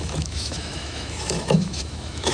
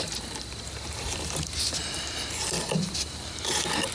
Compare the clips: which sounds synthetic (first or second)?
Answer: first